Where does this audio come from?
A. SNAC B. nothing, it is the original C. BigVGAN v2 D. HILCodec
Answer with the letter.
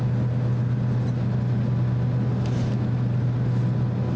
B